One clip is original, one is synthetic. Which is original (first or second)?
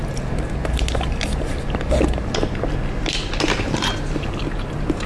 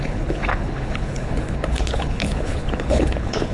first